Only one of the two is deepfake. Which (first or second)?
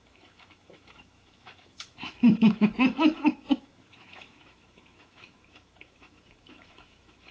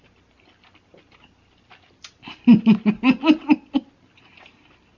first